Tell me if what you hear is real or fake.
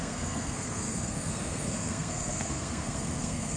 fake